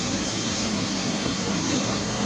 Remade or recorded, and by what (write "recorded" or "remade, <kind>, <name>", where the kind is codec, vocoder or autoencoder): remade, codec, SNAC